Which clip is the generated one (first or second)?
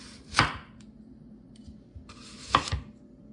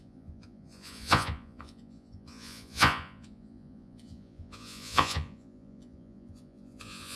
second